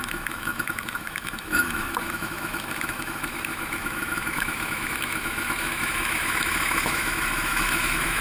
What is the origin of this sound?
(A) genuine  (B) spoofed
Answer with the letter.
B